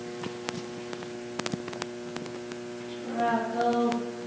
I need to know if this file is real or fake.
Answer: real